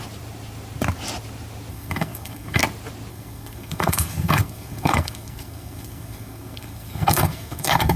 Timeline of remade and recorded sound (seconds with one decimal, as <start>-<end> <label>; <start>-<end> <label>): 0.0-1.7 recorded; 1.7-2.6 remade; 2.6-3.1 recorded; 3.1-8.0 remade